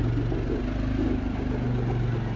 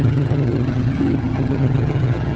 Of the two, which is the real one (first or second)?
first